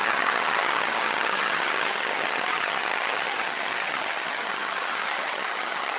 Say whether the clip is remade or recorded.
remade